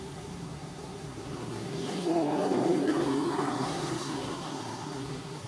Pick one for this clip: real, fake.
fake